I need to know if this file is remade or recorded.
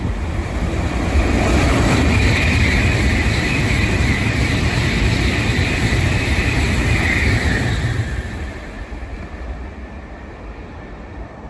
remade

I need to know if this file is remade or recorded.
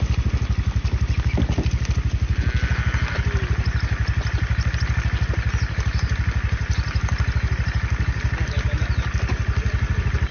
recorded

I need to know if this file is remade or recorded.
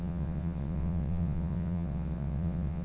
remade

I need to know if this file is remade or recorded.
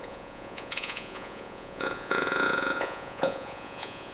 remade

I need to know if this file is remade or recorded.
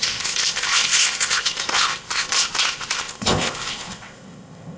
remade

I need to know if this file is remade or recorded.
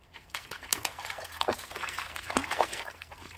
remade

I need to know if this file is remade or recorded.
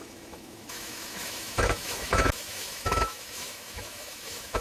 remade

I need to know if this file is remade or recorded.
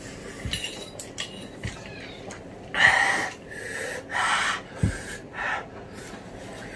recorded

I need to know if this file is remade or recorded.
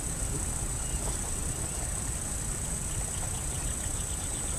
recorded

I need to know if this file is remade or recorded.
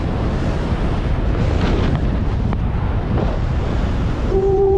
remade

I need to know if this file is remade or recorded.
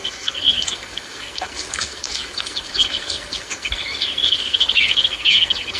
remade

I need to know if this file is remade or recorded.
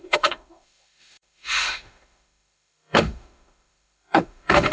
remade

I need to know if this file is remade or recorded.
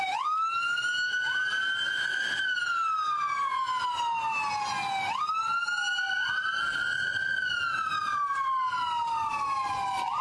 recorded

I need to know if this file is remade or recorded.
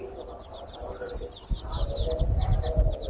recorded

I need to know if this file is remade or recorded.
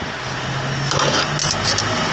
recorded